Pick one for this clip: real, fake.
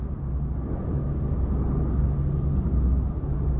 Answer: real